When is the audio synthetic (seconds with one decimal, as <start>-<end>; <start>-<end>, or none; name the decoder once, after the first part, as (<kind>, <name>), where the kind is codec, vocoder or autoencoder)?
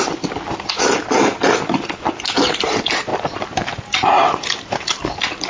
none